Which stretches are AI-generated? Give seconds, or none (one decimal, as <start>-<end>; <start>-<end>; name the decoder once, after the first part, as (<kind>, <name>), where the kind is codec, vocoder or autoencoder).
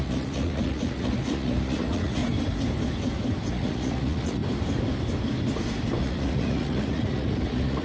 0.0-2.2 (vocoder, Vocos); 3.5-4.4; 6.0-7.8